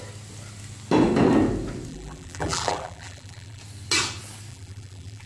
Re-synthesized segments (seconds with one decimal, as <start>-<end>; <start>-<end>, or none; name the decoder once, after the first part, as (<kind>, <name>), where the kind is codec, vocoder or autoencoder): 1.9-3.6 (vocoder, BigVGAN v2); 4.5-5.3